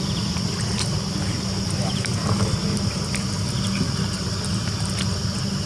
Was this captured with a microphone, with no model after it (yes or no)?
yes